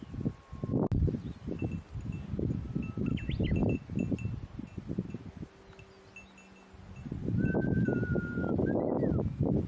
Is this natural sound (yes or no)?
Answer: yes